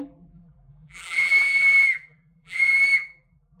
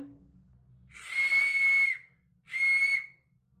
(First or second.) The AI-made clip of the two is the first